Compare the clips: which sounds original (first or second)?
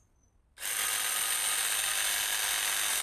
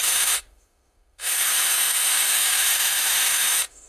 first